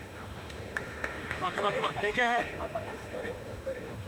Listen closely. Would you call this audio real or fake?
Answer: fake